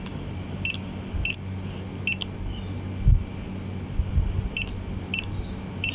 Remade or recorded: recorded